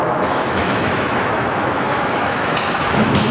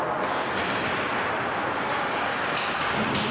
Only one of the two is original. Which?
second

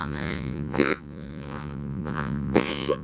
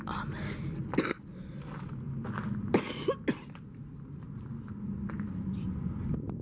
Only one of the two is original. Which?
second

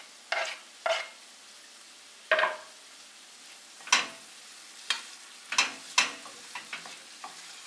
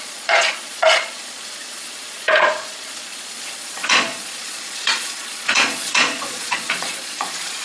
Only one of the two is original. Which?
first